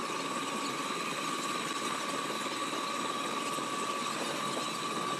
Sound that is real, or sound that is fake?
real